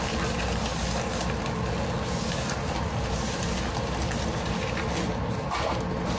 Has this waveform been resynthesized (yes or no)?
no